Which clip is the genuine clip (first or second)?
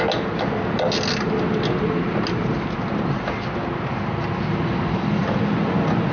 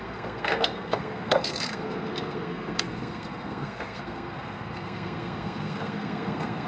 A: first